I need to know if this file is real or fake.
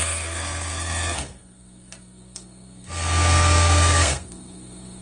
fake